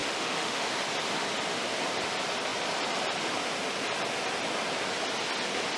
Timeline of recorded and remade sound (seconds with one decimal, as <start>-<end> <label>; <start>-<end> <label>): 0.0-0.7 remade; 0.7-5.8 recorded